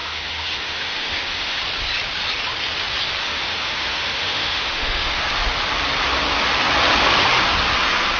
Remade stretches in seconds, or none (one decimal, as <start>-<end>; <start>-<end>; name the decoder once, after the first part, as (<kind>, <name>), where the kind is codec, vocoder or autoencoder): 0.0-1.6 (autoencoder, DAC-VAE); 3.2-5.2